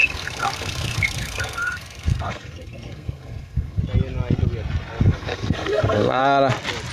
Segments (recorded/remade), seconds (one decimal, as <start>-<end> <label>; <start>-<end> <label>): 0.0-3.8 remade; 3.8-5.0 recorded; 5.0-6.2 remade; 6.2-6.9 recorded